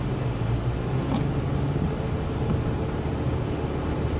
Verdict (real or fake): real